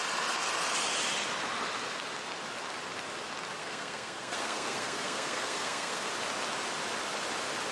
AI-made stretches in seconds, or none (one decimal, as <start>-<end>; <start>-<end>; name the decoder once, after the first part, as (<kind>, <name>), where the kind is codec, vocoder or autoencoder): 3.6-6.1 (codec, SNAC)